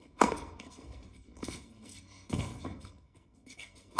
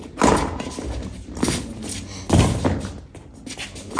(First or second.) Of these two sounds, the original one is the second